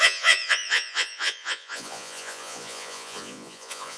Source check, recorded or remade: remade